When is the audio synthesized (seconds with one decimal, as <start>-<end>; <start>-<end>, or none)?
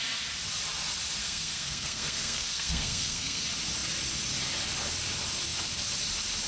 1.2-3.4